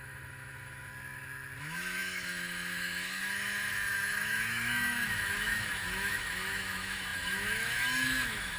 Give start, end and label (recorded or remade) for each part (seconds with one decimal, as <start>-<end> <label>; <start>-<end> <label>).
0.0-0.9 remade; 0.9-1.6 recorded; 1.6-8.6 remade